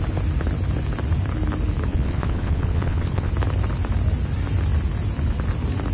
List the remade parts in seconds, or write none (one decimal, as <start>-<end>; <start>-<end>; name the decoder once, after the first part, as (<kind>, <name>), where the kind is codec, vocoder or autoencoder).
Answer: 1.9-3.3 (vocoder, Vocos)

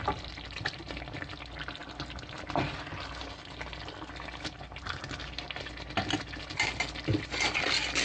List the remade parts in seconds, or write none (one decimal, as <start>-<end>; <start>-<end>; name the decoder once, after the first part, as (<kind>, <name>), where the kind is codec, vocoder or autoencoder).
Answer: none

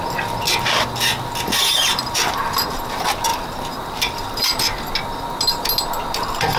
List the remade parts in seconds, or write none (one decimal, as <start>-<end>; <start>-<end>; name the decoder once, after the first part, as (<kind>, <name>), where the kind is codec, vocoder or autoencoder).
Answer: 1.9-2.4 (vocoder, BigVGAN v2); 3.3-4.2

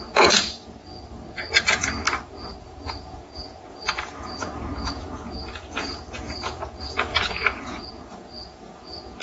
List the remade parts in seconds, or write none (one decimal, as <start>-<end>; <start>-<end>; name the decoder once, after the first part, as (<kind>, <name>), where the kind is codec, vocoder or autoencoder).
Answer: 0.0-2.0 (vocoder, Vocos); 2.6-9.2